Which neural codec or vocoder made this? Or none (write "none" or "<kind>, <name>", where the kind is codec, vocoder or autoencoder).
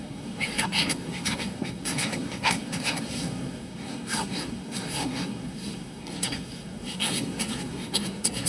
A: codec, SNAC